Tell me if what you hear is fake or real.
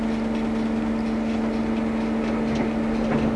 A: real